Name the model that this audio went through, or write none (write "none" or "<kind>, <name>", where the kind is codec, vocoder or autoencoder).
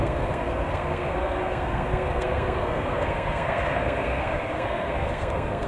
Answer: codec, SNAC